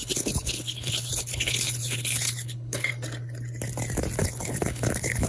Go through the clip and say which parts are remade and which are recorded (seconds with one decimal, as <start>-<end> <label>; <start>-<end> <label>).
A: 0.0-2.9 remade; 2.9-4.2 recorded; 4.2-5.3 remade